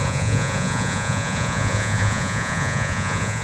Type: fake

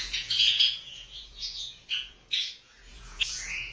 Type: fake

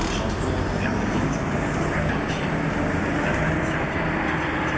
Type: real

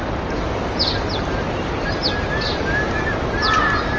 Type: real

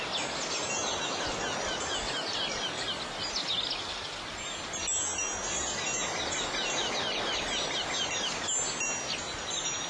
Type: real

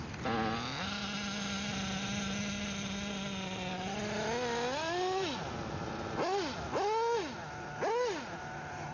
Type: real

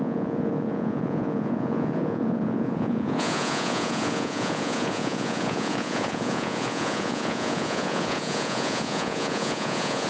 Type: fake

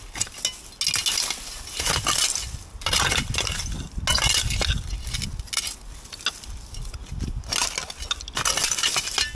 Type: real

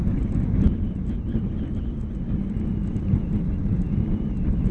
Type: real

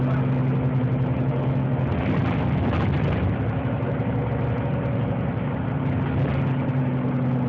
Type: real